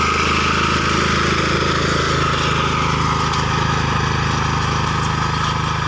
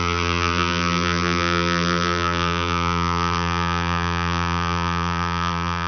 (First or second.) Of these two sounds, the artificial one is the second